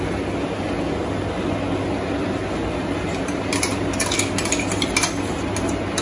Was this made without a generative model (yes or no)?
yes